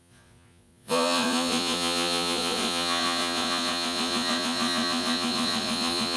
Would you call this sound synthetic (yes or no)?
yes